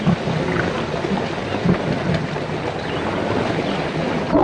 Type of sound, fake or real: real